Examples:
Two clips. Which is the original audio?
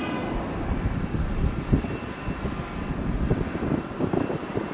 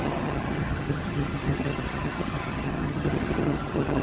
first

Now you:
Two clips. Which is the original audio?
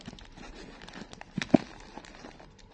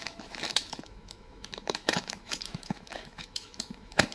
first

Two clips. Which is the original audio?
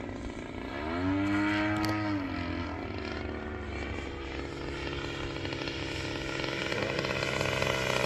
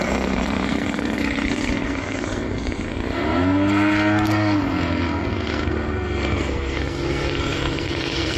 first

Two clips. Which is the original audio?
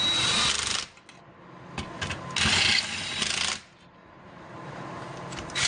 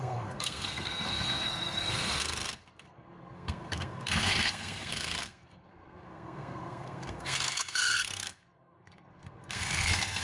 first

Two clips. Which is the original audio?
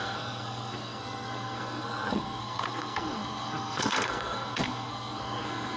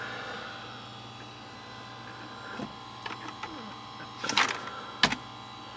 second